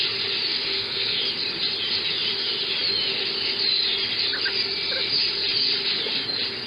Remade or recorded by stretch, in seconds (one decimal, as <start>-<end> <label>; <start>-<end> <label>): 0.0-0.5 recorded; 0.5-1.2 remade; 1.2-6.7 recorded